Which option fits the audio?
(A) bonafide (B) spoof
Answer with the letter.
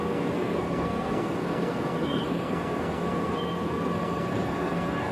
B